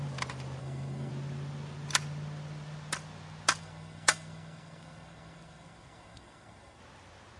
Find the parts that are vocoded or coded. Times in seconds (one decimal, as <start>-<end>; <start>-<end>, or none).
0.6-1.1; 3.6-6.8